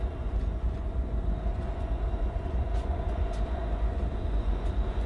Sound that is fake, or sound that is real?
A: fake